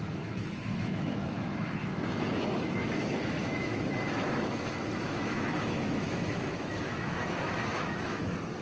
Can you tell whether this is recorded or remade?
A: remade